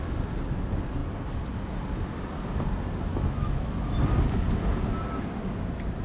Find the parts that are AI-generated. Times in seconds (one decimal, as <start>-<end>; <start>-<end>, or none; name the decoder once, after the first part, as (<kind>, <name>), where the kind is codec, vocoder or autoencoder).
3.1-3.8 (autoencoder, DAC-VAE)